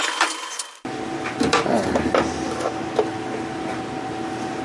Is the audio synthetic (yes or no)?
no